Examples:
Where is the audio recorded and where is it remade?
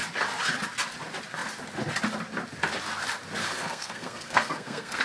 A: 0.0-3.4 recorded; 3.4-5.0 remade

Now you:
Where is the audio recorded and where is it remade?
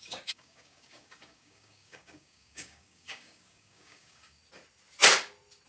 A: 0.0-4.4 remade; 4.4-5.7 recorded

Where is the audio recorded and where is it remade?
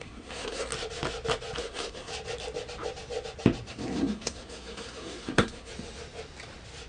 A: 0.0-0.7 remade; 0.7-1.6 recorded; 1.6-2.1 remade; 2.1-3.7 recorded; 3.7-5.7 remade; 5.7-6.9 recorded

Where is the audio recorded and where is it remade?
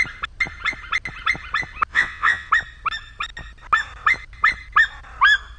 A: 0.0-1.9 recorded; 1.9-2.5 remade; 2.5-5.6 recorded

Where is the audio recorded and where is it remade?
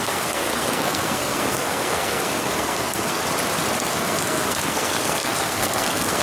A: 0.0-3.2 remade; 3.2-3.8 recorded; 3.8-6.2 remade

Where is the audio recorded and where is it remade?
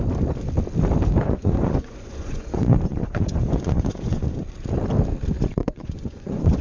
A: 0.0-1.2 recorded; 1.2-4.4 remade; 4.4-5.6 recorded; 5.6-6.6 remade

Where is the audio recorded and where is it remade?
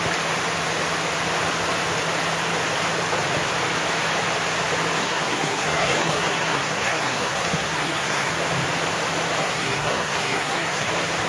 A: 0.0-5.0 recorded; 5.0-8.3 remade; 8.3-9.4 recorded; 9.4-10.9 remade; 10.9-11.3 recorded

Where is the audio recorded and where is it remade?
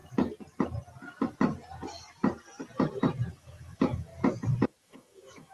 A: 0.0-3.3 recorded; 3.3-4.1 remade; 4.1-4.8 recorded; 4.8-5.5 remade